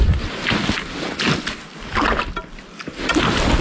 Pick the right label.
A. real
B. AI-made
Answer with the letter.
A